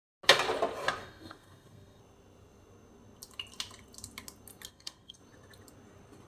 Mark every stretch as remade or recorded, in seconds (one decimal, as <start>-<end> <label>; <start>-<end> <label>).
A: 0.0-1.0 recorded; 1.0-2.0 remade; 2.0-4.7 recorded; 4.7-5.2 remade; 5.2-6.3 recorded